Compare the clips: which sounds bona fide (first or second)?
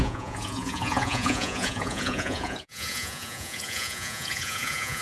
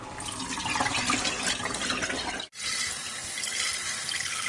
second